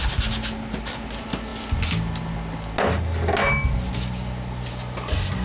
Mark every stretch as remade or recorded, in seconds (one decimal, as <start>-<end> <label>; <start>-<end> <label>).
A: 0.0-5.4 recorded